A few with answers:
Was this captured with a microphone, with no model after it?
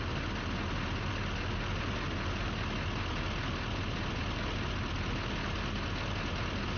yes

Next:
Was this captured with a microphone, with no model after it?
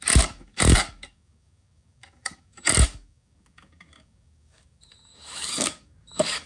no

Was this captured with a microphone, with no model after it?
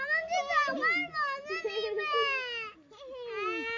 yes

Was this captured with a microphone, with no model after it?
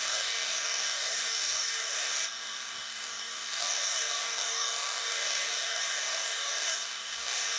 no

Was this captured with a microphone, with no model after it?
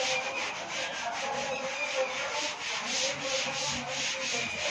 yes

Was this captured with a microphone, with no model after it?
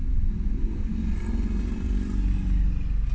yes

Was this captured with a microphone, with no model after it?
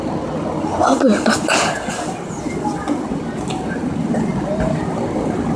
yes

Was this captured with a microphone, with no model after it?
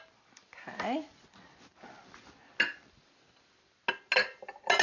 yes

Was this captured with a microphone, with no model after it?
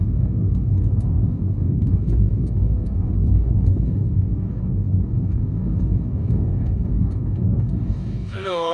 no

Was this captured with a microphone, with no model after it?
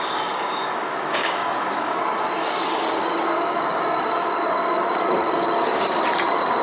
no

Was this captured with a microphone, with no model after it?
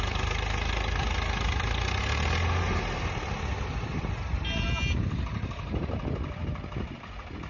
yes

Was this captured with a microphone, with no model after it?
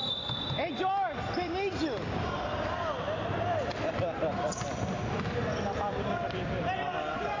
yes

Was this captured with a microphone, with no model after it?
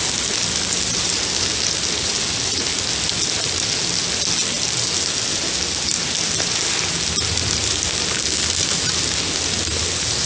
yes